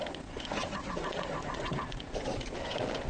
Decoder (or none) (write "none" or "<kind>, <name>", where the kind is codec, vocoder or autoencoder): vocoder, Vocos